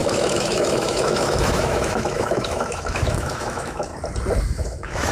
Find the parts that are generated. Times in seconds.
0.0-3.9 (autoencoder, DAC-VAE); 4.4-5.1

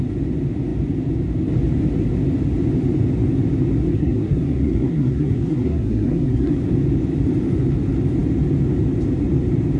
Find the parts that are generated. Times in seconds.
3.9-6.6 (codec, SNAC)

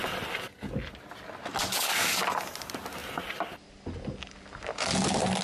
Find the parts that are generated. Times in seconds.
1.6-2.2 (codec, DAC)

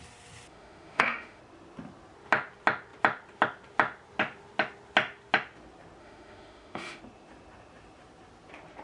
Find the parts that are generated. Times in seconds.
0.5-1.4 (autoencoder, DAC-VAE); 6.0-7.0